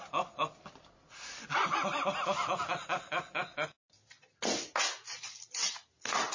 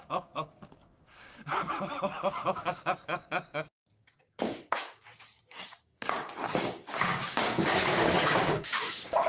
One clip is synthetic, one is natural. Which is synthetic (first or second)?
second